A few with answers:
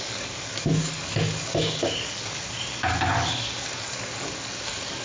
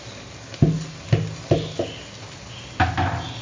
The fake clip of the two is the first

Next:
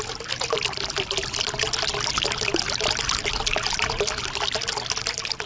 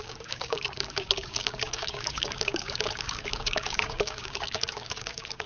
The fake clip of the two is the second